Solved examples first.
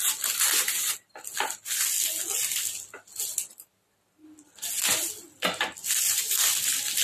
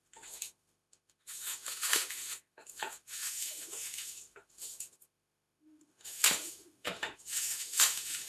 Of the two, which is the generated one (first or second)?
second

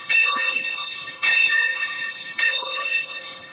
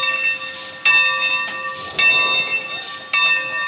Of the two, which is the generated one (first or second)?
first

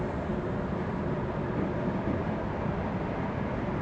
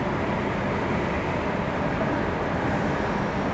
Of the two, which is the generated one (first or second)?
first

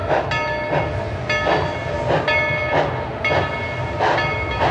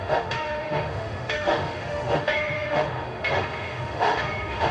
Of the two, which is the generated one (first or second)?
second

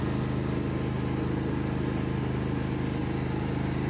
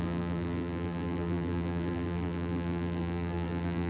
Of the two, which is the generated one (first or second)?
second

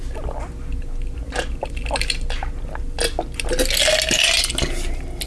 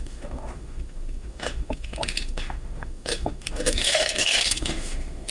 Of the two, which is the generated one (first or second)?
second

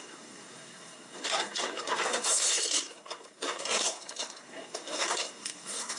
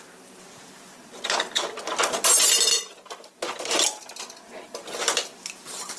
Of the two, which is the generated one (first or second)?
first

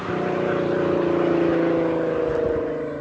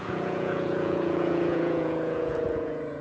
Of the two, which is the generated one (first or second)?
second